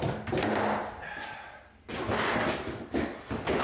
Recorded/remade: recorded